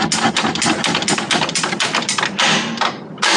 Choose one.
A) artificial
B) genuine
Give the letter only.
B